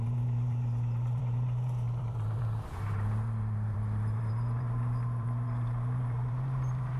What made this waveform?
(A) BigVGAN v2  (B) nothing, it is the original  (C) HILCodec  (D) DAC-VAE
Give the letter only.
A